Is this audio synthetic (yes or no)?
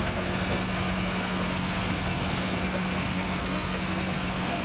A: yes